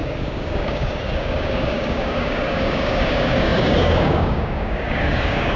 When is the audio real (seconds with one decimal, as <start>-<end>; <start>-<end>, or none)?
none